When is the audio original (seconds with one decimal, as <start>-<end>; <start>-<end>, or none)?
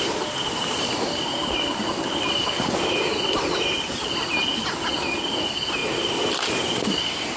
0.0-7.4